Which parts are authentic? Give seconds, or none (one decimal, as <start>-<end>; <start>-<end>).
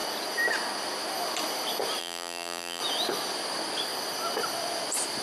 0.0-2.0; 2.8-5.2